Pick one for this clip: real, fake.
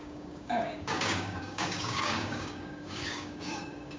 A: fake